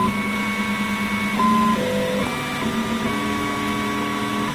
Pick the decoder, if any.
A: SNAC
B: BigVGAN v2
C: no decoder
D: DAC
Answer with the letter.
C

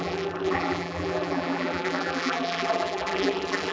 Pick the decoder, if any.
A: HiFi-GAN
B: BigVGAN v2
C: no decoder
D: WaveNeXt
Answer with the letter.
B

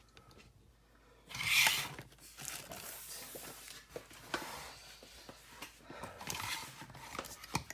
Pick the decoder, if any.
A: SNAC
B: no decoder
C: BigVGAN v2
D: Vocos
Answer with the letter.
B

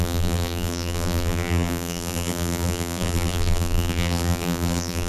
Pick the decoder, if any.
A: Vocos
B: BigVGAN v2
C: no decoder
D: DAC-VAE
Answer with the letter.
B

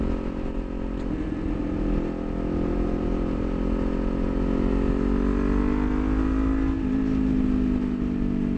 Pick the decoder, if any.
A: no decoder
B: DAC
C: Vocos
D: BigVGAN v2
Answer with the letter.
A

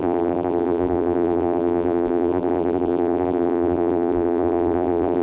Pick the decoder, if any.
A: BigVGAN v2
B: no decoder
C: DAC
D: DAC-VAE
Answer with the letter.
A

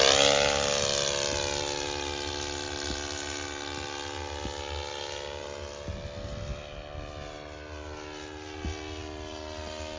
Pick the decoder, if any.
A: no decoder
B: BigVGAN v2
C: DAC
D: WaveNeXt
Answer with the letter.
A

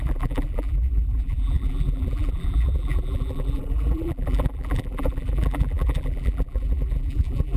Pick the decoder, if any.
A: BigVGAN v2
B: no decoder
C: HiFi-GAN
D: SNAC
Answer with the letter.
A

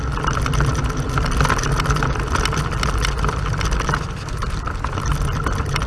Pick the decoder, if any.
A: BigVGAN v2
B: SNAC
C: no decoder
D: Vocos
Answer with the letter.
C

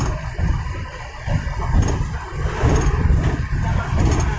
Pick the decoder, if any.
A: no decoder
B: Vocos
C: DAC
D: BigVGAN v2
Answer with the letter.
D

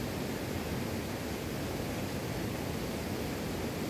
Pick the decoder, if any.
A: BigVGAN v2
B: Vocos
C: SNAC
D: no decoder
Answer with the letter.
D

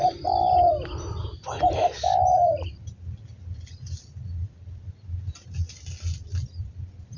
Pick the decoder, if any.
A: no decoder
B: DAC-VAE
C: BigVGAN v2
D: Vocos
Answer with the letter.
A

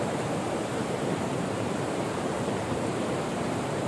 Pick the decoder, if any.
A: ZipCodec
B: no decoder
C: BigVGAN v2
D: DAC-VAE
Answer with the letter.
C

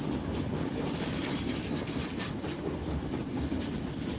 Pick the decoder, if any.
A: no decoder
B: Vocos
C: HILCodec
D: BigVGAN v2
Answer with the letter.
D